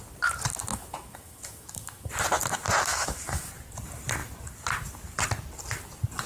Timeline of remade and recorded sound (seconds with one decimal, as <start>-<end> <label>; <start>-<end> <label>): 0.0-0.7 recorded; 0.7-2.1 remade; 2.1-2.9 recorded; 2.9-3.5 remade; 3.5-6.3 recorded